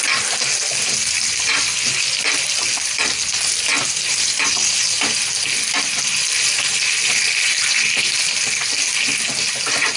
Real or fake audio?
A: real